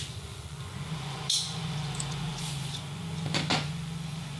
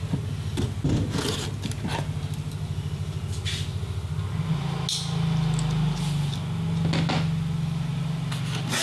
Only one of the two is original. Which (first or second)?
second